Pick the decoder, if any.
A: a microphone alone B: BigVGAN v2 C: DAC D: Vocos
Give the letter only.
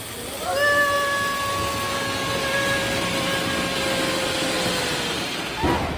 A